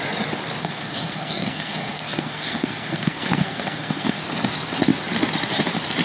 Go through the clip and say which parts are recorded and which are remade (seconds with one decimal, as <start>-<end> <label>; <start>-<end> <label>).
0.0-0.6 recorded; 0.6-4.2 remade; 4.2-6.0 recorded